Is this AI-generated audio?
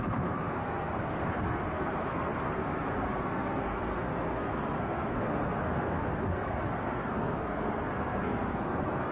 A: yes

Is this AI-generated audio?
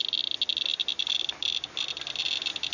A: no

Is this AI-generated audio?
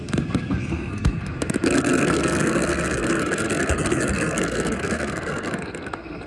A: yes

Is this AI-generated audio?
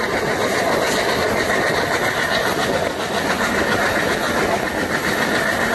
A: no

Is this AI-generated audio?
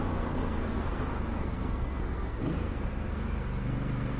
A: yes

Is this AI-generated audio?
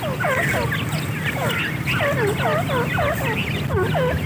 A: no